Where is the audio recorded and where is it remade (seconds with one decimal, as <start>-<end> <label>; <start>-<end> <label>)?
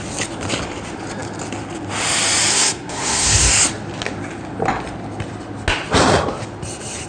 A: 0.0-2.5 recorded; 2.5-3.5 remade; 3.5-7.1 recorded